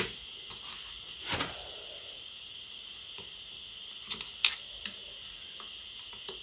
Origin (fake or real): real